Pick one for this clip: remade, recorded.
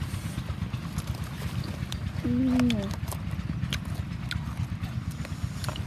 recorded